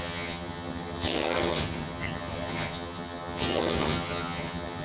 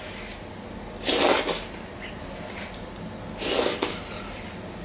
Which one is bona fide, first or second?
second